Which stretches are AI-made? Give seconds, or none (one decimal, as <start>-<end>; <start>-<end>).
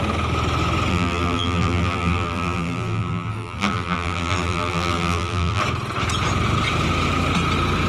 0.9-5.6